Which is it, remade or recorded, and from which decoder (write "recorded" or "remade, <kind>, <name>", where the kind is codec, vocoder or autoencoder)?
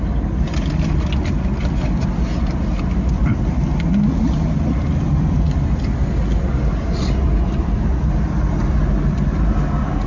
recorded